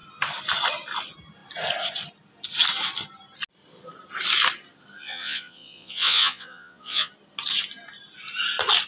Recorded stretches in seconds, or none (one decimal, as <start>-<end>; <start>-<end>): 0.0-5.0; 7.1-8.9